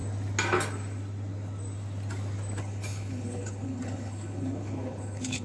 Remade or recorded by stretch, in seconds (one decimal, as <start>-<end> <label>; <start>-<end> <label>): 0.0-2.6 recorded; 2.6-5.4 remade